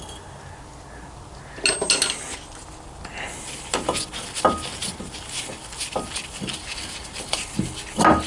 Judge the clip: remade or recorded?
recorded